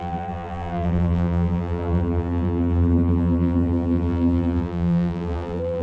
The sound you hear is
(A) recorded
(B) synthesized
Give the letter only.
B